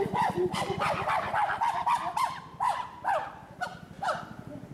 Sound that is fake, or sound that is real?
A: real